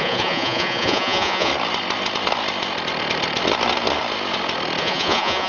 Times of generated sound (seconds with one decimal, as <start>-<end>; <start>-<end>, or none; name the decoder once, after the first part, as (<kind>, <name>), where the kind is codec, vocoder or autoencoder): 0.0-1.5 (vocoder, Vocos); 4.8-5.5

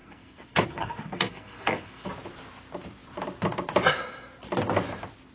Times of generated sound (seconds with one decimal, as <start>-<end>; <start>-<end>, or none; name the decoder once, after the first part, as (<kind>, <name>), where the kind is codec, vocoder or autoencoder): 0.0-2.1 (codec, SNAC)

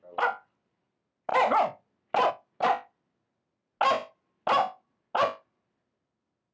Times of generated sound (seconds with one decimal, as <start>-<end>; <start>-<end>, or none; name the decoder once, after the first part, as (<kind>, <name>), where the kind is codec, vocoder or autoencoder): none

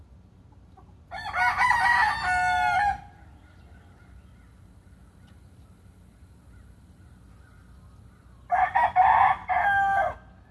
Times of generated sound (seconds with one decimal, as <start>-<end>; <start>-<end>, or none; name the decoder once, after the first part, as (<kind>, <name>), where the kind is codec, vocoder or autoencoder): none